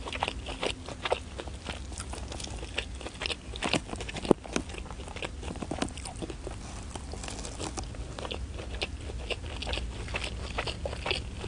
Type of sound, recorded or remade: recorded